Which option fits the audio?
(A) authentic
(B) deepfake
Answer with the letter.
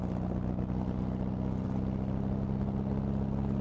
A